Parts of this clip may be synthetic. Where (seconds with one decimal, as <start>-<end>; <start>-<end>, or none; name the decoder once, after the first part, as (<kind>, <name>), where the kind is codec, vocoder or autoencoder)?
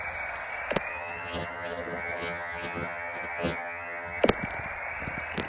0.9-4.2 (vocoder, HiFi-GAN)